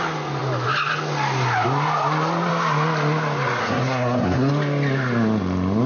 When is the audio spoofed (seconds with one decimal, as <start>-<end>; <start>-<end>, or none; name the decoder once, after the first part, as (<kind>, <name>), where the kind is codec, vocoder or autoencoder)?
3.6-4.5 (codec, SNAC)